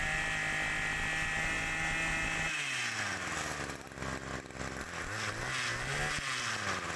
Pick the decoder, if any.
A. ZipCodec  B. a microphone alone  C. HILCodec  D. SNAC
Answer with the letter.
B